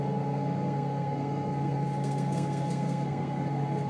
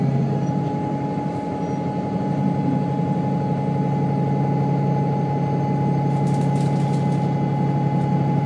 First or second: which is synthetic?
first